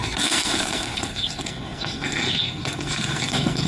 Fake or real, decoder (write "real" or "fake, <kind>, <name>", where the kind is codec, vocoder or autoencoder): fake, codec, SNAC